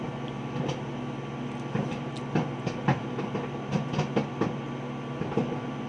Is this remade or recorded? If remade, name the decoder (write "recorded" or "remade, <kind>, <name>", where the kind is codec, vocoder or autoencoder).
recorded